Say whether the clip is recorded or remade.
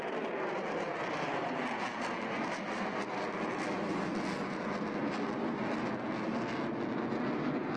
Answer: recorded